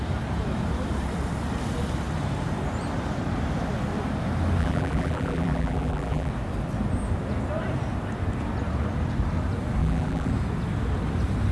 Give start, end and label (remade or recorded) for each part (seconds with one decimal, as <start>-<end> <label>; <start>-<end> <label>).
0.0-4.6 recorded; 4.6-6.3 remade; 6.3-9.8 recorded; 9.8-10.3 remade; 10.3-11.5 recorded